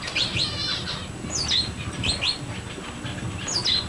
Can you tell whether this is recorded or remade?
recorded